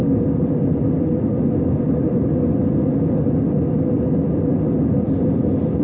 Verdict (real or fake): real